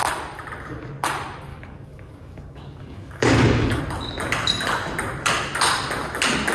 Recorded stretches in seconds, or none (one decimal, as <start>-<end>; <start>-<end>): 0.0-1.5; 3.8-6.5